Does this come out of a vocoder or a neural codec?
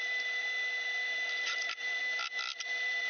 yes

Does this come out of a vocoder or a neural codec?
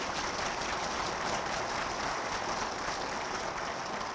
no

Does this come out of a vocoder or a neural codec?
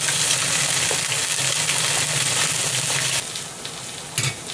no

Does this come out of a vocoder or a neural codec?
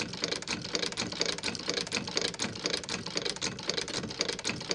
yes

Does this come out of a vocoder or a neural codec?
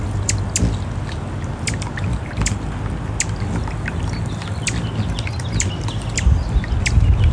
no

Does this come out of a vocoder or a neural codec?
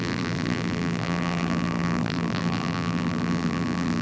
yes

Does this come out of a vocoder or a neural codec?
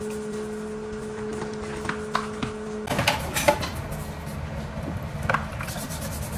no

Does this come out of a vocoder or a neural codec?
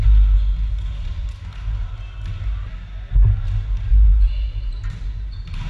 no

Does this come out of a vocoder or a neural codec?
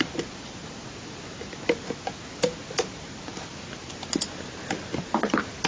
no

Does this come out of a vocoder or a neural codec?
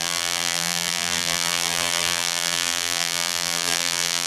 yes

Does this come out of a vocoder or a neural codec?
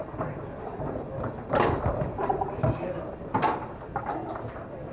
yes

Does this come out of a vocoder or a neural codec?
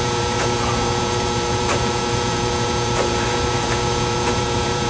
yes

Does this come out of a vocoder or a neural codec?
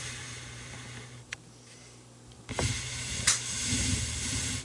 yes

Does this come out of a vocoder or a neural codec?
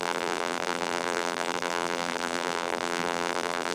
yes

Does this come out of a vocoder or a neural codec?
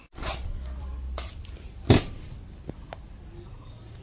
yes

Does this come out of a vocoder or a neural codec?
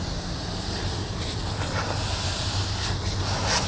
no